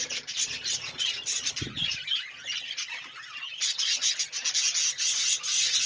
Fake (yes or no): no